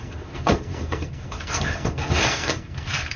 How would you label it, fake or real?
fake